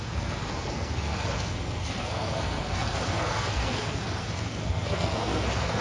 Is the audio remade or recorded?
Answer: remade